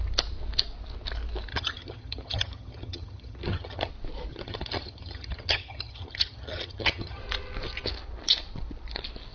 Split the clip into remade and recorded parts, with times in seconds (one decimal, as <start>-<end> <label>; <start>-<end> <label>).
0.0-1.5 recorded; 1.5-3.9 remade; 3.9-4.3 recorded; 4.3-7.2 remade; 7.2-9.3 recorded